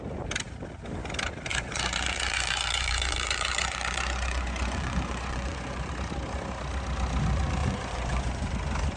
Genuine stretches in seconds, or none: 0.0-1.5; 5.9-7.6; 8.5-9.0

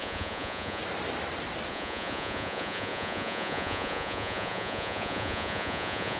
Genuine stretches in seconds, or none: 0.8-1.7

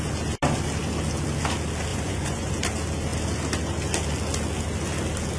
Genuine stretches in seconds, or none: 0.0-1.9; 2.5-5.4